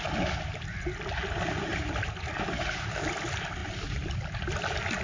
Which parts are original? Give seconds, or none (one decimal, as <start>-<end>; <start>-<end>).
0.0-1.7; 2.3-3.6